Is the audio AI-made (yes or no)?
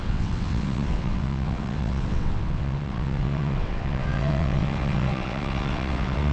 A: yes